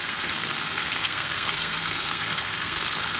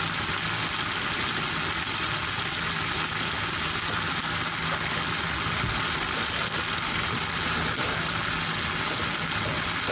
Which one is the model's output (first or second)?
first